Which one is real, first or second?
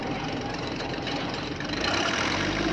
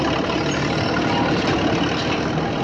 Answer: second